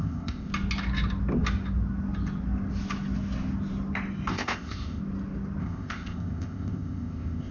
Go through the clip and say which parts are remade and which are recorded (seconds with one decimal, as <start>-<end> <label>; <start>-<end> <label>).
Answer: 0.0-0.5 remade; 0.5-4.3 recorded; 4.3-5.0 remade; 5.0-5.6 recorded; 5.6-7.5 remade

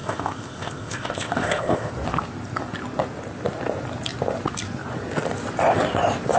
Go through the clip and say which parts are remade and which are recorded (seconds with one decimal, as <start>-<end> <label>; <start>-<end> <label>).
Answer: 0.0-1.9 remade; 1.9-6.4 recorded

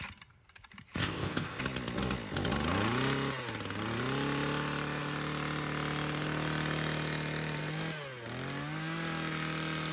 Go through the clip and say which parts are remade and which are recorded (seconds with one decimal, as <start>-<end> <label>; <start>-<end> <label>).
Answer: 0.0-1.0 recorded; 1.0-1.6 remade; 1.6-9.9 recorded

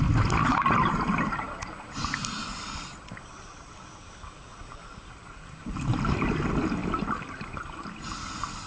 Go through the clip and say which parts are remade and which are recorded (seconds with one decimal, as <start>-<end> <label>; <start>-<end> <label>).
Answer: 0.0-8.7 recorded